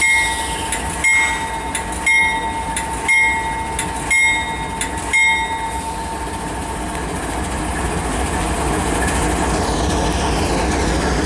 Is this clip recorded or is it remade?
recorded